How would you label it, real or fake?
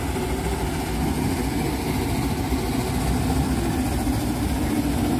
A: real